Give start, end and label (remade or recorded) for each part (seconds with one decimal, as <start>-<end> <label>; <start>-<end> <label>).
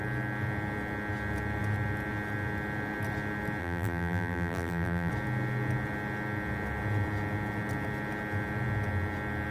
0.0-3.6 recorded; 3.6-5.1 remade; 5.1-9.5 recorded